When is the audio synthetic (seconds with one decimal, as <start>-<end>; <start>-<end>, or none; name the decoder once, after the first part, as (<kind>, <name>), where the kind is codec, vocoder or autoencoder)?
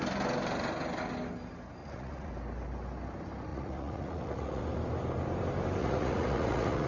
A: 1.8-2.3 (vocoder, Vocos); 3.5-4.6; 5.8-6.9